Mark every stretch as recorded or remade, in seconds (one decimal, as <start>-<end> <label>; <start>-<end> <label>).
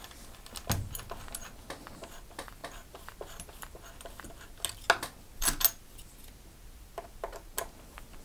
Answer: 0.0-8.2 recorded